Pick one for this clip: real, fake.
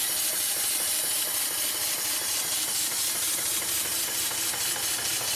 fake